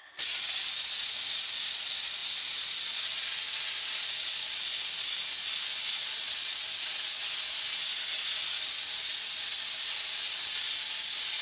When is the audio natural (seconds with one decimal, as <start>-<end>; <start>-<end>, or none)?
0.0-11.4